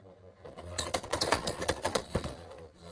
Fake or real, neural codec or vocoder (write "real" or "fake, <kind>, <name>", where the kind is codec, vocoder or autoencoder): fake, vocoder, Vocos